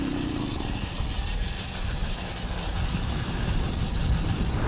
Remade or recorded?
recorded